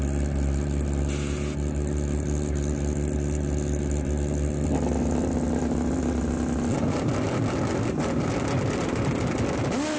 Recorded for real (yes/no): yes